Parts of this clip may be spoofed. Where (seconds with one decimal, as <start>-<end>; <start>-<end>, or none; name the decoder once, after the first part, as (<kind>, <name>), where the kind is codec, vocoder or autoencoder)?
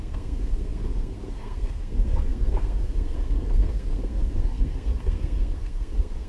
0.0-6.3 (codec, SNAC)